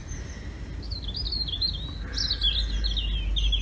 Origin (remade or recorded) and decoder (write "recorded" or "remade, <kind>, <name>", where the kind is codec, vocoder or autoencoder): recorded